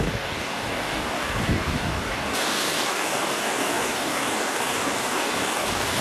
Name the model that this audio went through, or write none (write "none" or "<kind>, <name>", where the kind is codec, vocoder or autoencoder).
codec, DAC